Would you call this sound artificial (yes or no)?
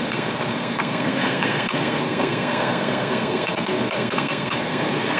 yes